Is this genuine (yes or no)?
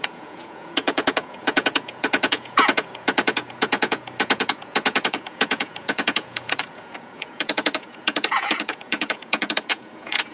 no